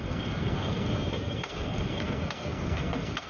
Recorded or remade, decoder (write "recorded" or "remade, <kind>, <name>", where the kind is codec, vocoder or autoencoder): remade, codec, SNAC